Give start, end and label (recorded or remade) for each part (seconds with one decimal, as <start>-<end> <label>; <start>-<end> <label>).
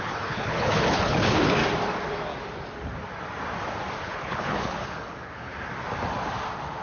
0.0-1.6 remade; 1.6-4.0 recorded; 4.0-5.5 remade; 5.5-6.8 recorded